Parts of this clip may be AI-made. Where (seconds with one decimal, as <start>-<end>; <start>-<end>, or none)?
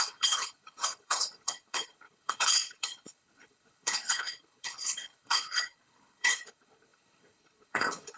0.0-8.2